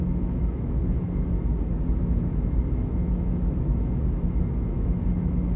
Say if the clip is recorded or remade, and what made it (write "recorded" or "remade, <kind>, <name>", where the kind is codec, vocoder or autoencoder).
remade, autoencoder, DAC-VAE